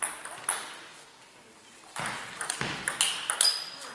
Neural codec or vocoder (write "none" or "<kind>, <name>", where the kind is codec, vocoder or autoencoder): none